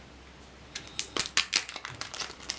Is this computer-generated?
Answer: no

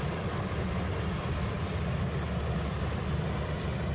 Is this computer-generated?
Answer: no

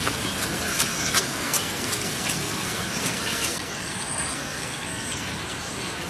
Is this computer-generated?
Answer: yes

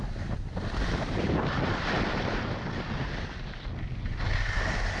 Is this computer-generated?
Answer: no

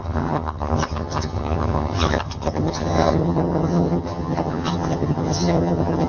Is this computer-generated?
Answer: yes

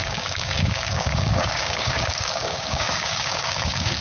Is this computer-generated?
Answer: yes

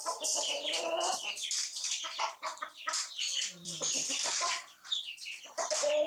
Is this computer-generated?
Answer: yes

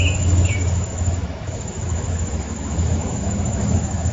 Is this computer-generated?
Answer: yes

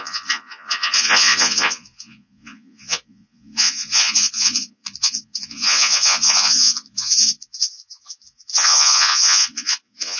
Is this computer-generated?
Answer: yes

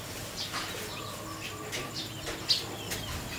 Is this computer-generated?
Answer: no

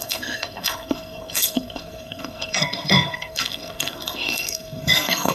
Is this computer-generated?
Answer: yes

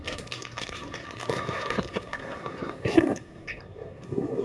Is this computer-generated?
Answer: yes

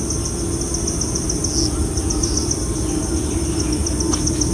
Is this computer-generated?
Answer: no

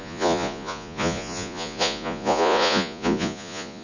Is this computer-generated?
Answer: yes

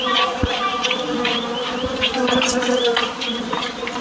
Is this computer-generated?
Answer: yes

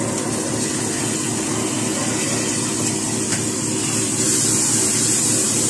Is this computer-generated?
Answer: no